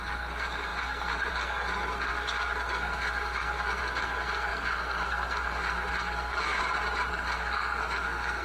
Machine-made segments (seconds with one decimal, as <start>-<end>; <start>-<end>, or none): 0.0-6.6; 7.1-8.4